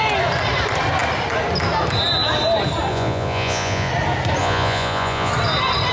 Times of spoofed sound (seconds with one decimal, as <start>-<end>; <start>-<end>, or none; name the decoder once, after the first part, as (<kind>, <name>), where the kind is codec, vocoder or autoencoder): 2.9-3.9 (vocoder, Vocos); 4.4-5.3